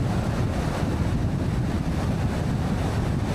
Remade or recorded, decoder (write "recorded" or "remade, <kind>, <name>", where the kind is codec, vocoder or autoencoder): recorded